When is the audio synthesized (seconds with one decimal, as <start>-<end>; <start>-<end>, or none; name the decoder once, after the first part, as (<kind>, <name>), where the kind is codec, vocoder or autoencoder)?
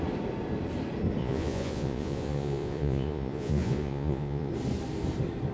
1.2-4.5 (vocoder, Vocos)